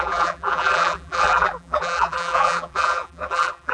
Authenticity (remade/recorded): remade